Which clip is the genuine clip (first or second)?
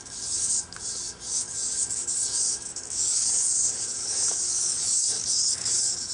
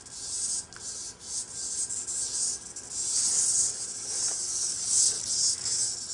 second